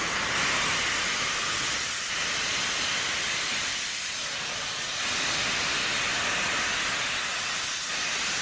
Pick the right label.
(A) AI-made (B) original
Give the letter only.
B